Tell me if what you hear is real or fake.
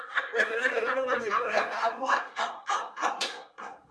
fake